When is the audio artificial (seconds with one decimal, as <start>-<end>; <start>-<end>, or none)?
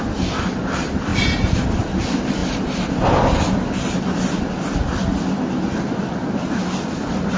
none